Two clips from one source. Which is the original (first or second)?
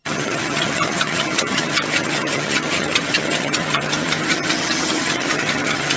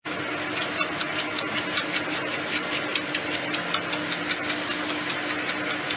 second